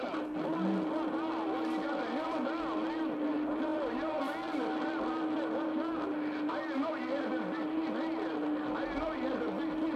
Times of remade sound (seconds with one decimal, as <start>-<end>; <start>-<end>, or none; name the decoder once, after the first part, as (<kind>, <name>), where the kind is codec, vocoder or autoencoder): none